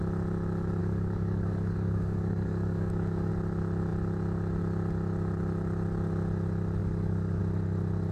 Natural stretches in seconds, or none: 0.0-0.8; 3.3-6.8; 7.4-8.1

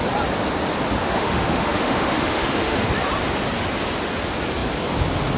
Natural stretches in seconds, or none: 0.0-1.0; 2.9-5.4

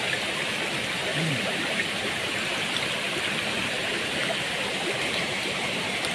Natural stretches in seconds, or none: 0.0-1.1; 3.1-3.8

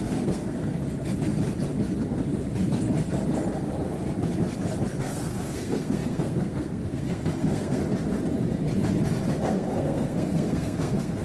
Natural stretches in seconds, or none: 0.8-5.0; 7.8-9.3